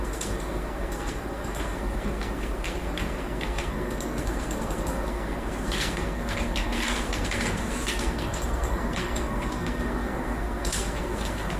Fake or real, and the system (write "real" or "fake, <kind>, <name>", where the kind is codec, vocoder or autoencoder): fake, codec, SNAC